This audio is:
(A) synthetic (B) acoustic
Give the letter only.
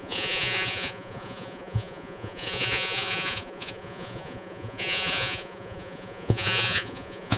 A